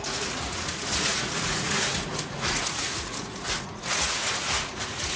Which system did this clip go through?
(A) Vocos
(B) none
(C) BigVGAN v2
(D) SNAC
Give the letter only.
A